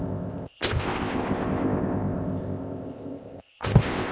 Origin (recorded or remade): remade